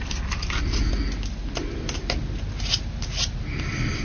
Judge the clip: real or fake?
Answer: real